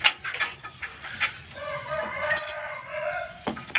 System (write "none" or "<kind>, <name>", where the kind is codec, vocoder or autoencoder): vocoder, Vocos